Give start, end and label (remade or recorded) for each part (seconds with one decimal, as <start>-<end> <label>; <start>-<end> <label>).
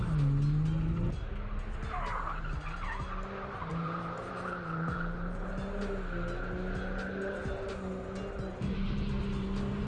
0.0-3.7 recorded; 3.7-5.5 remade; 5.5-9.9 recorded